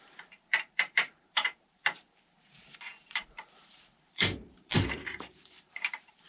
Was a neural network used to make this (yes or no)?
yes